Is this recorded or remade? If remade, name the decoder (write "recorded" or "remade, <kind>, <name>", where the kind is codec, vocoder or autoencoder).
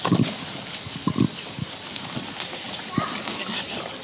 recorded